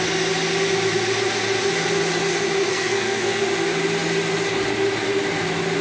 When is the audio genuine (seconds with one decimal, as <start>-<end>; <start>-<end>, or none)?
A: 0.0-2.7; 3.4-5.8